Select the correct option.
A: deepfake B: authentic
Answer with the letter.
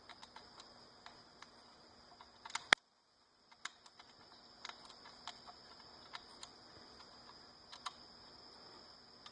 B